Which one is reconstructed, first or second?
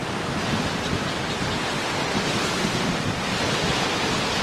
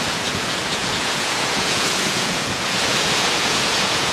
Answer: second